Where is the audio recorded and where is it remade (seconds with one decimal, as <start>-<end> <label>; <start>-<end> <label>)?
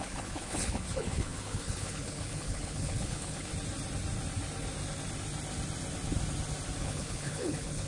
0.0-3.5 remade; 3.5-6.8 recorded; 6.8-7.9 remade